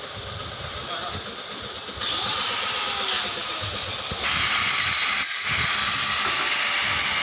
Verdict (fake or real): real